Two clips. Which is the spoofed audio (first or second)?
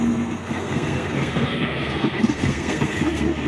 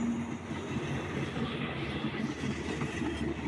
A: first